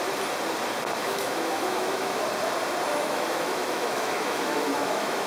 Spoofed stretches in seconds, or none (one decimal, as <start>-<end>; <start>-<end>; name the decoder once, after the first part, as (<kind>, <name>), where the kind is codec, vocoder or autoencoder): 1.0-2.2 (autoencoder, DAC-VAE); 2.9-5.3